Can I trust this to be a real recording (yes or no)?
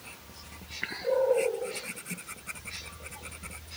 no